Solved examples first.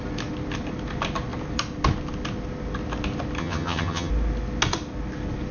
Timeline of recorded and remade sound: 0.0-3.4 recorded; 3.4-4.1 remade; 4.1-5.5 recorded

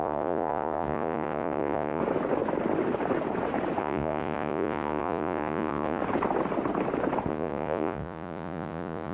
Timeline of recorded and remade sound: 0.0-2.0 remade; 2.0-3.8 recorded; 3.8-6.0 remade; 6.0-7.3 recorded; 7.3-9.1 remade

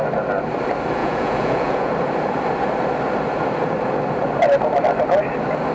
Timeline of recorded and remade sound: 0.0-1.0 recorded; 1.0-1.9 remade; 1.9-5.7 recorded

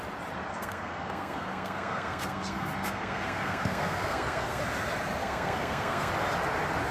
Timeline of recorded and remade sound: 0.0-0.5 recorded; 0.5-4.6 remade; 4.6-5.2 recorded; 5.2-6.1 remade; 6.1-6.9 recorded

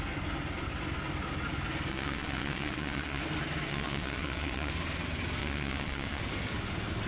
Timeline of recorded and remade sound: 0.0-1.9 recorded; 1.9-3.2 remade; 3.2-3.7 recorded; 3.7-4.7 remade; 4.7-5.4 recorded; 5.4-6.2 remade; 6.2-7.1 recorded

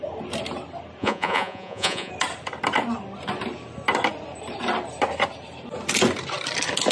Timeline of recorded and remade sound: 0.0-1.0 recorded; 1.0-2.1 remade; 2.1-6.9 recorded

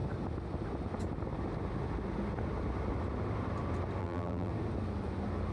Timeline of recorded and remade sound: 0.0-4.0 recorded; 4.0-4.5 remade; 4.5-5.5 recorded